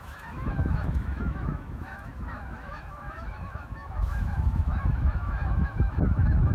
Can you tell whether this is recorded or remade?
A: remade